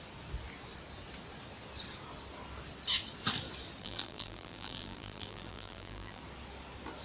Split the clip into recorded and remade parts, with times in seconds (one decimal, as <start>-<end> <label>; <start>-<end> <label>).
0.0-3.8 recorded; 3.8-6.2 remade; 6.2-7.0 recorded